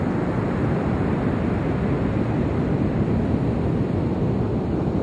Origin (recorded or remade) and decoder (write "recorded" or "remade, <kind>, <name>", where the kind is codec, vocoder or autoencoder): recorded